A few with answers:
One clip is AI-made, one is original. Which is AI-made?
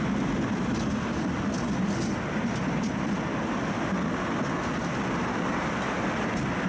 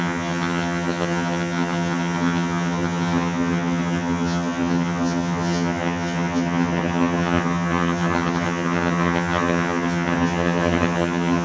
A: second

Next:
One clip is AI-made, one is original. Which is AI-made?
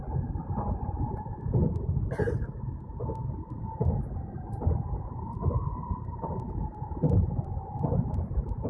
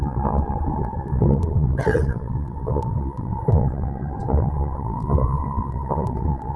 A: second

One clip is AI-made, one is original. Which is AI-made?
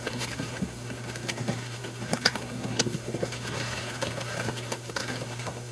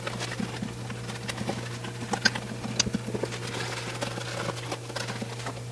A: first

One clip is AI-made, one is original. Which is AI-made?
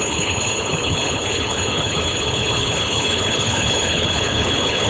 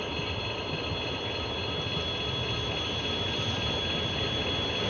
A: first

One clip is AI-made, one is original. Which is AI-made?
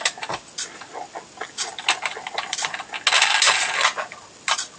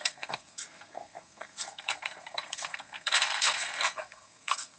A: second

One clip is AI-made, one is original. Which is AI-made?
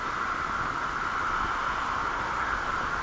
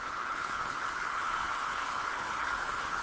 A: second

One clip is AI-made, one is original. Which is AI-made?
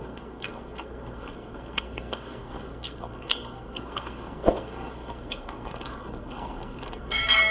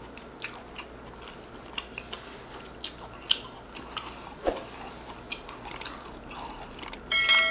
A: first